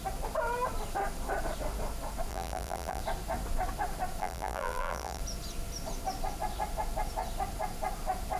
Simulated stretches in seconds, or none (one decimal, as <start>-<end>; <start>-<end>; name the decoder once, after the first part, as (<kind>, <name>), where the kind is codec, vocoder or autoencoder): 2.3-3.0 (vocoder, BigVGAN v2); 4.2-5.2